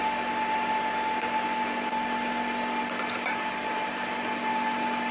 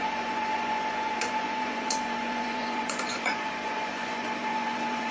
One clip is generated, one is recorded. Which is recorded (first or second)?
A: first